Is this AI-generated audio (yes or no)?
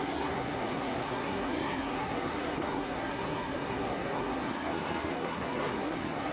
yes